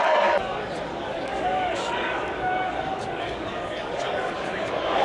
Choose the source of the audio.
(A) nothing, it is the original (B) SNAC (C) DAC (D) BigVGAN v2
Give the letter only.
C